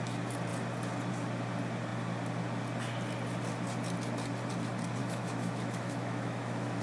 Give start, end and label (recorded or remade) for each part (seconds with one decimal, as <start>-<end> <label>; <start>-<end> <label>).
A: 0.0-5.0 recorded; 5.0-6.8 remade